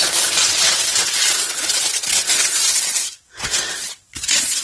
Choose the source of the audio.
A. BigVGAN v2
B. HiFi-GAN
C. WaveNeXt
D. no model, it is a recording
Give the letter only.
C